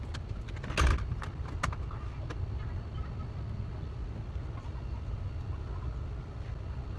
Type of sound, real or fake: real